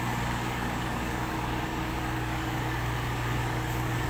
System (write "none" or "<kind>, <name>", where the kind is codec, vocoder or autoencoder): codec, DAC